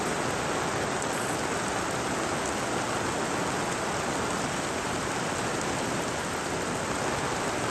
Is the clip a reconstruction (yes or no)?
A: no